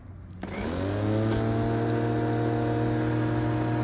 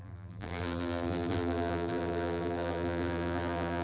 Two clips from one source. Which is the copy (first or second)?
second